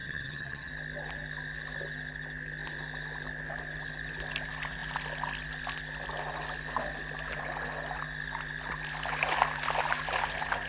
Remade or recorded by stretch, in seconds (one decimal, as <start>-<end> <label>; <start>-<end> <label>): 0.0-0.7 remade; 0.7-10.7 recorded